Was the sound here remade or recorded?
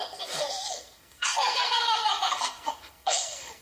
remade